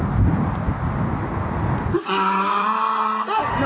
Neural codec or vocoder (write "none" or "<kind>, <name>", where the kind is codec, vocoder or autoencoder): none